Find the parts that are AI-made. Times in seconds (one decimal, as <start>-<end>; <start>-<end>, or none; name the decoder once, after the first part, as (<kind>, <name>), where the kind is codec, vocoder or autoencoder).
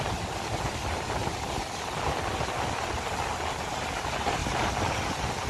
1.2-3.3 (vocoder, BigVGAN v2)